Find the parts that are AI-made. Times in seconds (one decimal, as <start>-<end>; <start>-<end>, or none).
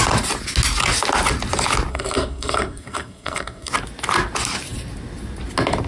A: 1.9-3.7